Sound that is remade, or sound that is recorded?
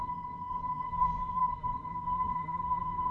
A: remade